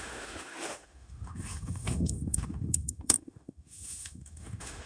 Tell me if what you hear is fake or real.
fake